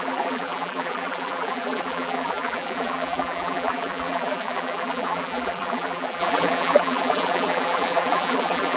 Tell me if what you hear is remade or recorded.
remade